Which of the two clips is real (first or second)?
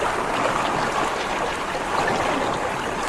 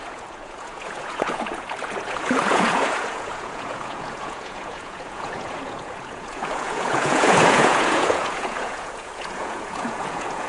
first